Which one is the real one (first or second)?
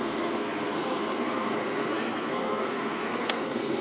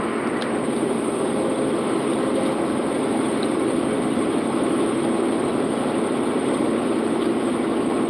second